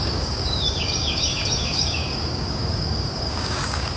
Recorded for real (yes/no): no